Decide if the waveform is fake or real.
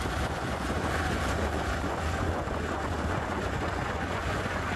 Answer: fake